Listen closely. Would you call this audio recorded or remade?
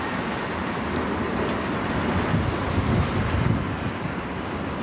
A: recorded